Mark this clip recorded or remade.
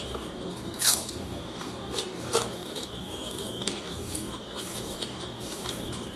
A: remade